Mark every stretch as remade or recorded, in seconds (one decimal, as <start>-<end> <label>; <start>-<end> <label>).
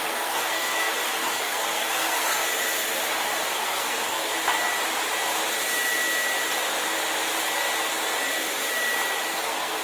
0.0-2.4 remade; 2.4-3.5 recorded; 3.5-4.3 remade; 4.3-9.3 recorded; 9.3-9.8 remade